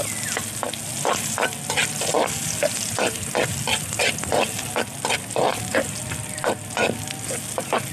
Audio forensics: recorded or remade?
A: recorded